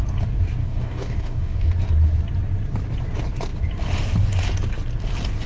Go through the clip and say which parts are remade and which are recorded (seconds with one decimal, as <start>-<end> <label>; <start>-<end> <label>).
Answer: 0.0-0.6 recorded; 0.6-1.7 remade; 1.7-5.5 recorded